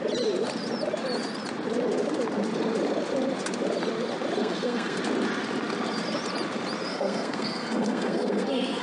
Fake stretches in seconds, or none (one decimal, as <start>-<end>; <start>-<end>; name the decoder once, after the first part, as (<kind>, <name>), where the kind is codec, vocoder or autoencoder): 4.4-5.0 (codec, SNAC); 6.9-8.8